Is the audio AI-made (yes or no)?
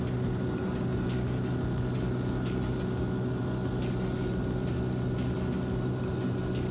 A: no